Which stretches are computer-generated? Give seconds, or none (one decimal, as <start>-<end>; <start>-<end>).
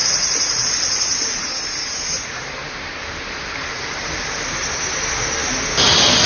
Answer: 0.0-0.7